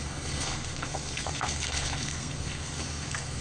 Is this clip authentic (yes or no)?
no